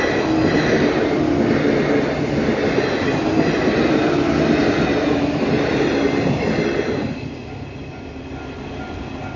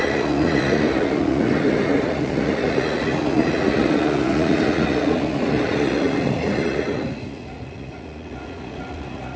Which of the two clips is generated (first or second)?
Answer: second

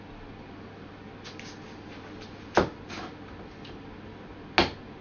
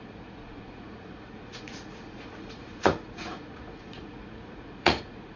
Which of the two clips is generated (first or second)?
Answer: second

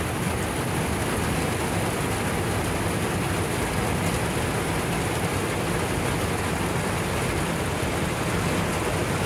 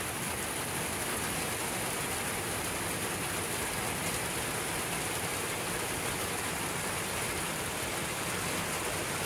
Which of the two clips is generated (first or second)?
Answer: second